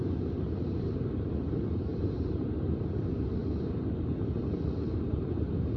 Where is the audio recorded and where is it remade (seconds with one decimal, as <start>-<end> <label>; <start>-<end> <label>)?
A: 0.0-3.4 remade; 3.4-4.9 recorded; 4.9-5.8 remade